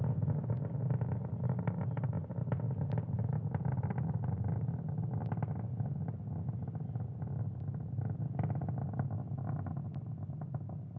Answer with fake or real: real